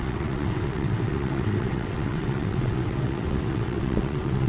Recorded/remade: remade